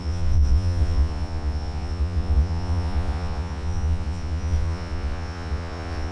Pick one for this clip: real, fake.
fake